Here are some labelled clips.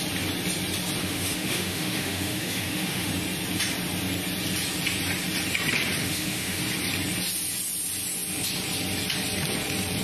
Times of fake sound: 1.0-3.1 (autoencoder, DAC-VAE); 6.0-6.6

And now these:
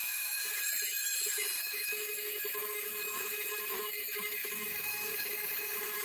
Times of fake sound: 0.0-6.0 (autoencoder, DAC-VAE)